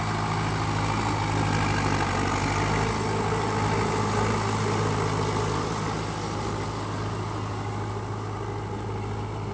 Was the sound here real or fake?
real